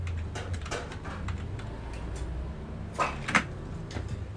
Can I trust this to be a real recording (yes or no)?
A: yes